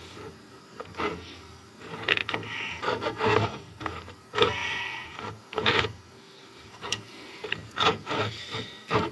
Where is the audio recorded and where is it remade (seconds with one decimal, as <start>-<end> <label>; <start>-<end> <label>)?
0.0-9.1 remade